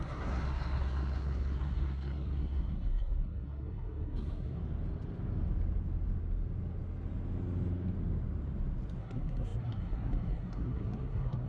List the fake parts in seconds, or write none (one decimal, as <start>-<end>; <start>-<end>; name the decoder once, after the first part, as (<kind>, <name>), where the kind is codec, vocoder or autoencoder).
0.0-4.6 (codec, SNAC); 9.0-11.5

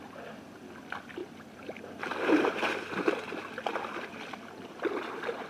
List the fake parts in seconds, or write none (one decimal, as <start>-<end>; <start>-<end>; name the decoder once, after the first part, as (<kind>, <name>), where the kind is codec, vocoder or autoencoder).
none

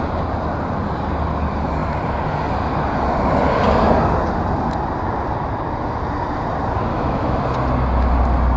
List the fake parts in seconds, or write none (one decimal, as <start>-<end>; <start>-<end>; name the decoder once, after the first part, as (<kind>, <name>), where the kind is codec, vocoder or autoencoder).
6.9-7.4 (autoencoder, DAC-VAE)

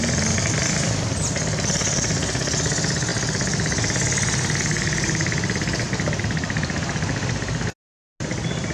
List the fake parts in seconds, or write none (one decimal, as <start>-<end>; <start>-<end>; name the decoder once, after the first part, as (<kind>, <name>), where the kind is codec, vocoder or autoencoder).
none